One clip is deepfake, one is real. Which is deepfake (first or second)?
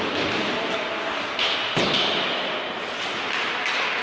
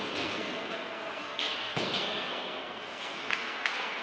second